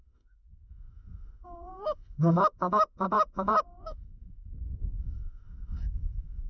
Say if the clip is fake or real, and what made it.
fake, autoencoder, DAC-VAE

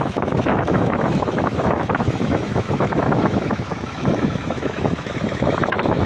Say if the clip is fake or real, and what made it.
fake, autoencoder, DAC-VAE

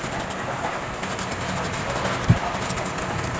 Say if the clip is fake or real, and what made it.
real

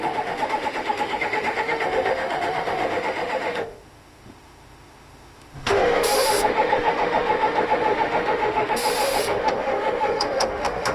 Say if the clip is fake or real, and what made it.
fake, autoencoder, DAC-VAE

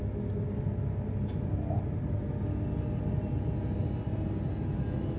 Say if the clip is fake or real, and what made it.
real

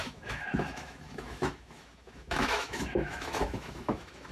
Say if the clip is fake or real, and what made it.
fake, autoencoder, DAC-VAE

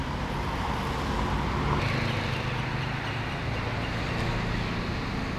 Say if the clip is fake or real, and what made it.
real